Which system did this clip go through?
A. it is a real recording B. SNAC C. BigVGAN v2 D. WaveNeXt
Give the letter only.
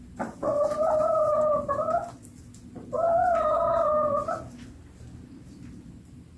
A